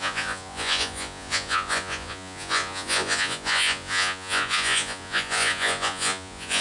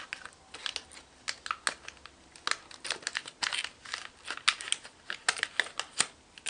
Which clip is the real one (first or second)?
second